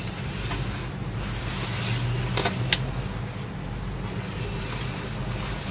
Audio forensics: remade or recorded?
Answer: recorded